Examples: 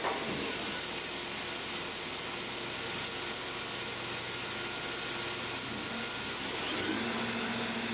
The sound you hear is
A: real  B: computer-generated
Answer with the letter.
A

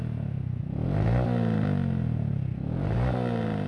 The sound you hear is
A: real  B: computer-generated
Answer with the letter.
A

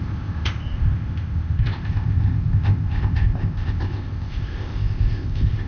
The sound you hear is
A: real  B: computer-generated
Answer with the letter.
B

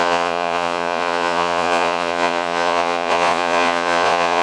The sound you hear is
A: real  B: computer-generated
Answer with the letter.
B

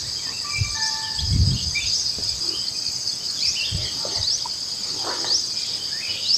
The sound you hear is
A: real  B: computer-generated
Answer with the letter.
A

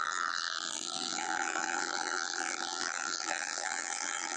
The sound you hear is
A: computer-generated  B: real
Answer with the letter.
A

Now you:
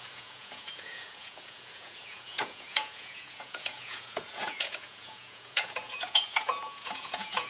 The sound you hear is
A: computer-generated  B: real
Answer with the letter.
A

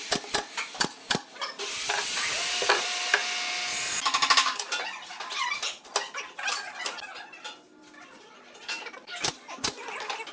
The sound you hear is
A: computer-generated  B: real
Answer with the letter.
B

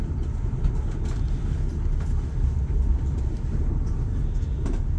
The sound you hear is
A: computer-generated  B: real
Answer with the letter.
B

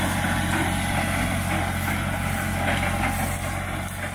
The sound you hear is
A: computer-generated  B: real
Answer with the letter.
B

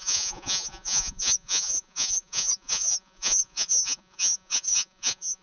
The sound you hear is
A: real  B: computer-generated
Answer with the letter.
B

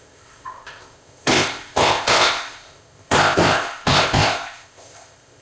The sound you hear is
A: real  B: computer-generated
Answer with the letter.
B